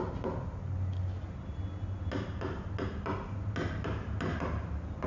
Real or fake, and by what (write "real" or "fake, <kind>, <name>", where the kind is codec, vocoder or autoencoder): real